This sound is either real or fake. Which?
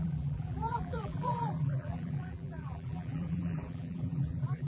fake